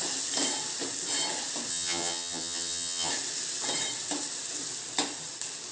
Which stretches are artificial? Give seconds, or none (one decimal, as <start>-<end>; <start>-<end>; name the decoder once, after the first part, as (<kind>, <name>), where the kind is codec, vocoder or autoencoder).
1.7-3.1 (vocoder, HiFi-GAN)